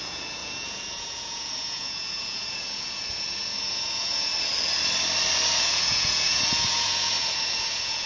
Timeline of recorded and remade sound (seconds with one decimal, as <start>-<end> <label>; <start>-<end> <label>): 0.0-4.3 remade; 4.3-5.6 recorded; 5.6-8.1 remade